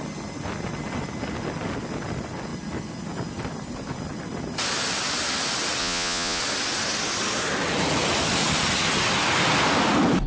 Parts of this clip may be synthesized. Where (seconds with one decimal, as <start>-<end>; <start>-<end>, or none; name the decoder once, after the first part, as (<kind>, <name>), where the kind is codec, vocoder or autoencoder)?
5.8-6.4 (vocoder, Vocos)